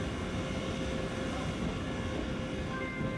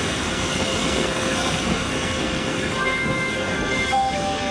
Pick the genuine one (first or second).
first